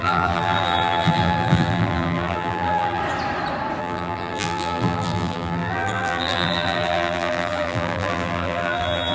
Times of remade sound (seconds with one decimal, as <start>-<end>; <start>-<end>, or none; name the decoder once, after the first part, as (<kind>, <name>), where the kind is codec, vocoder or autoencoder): 0.0-3.0 (vocoder, BigVGAN v2); 3.8-9.1